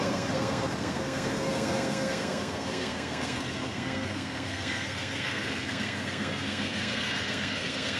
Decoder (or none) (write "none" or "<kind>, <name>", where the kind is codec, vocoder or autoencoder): codec, SNAC